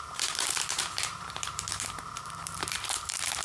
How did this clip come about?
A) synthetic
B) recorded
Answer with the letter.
A